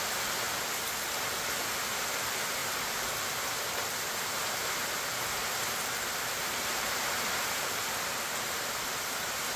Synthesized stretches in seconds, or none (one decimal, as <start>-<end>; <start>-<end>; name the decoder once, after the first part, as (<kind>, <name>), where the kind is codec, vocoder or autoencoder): 5.5-7.8 (vocoder, BigVGAN v2)